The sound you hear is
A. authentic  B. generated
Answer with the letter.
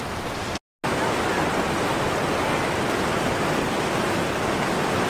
A